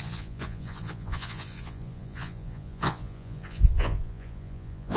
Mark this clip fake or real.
fake